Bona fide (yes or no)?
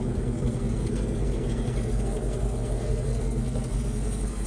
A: no